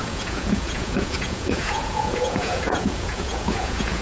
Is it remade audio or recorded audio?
remade